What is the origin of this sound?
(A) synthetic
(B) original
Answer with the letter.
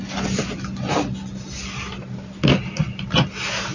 B